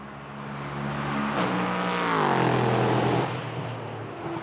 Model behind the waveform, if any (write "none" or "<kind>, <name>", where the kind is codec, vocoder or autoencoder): none